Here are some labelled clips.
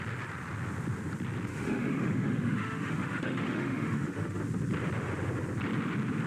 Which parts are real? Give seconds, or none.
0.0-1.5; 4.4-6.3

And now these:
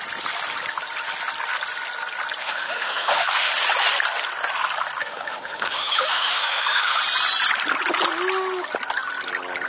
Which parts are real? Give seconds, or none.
0.0-2.4; 3.5-5.0; 7.0-9.7